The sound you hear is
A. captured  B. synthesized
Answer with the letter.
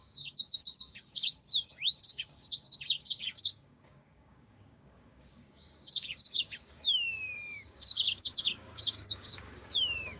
B